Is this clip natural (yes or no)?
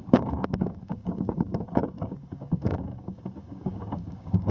no